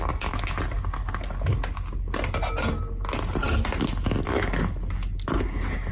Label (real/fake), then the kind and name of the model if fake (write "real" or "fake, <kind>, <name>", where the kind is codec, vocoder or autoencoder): real